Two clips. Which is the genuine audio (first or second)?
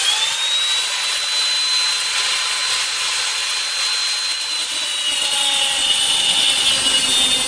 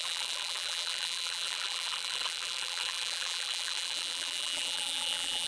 first